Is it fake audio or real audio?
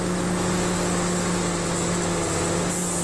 real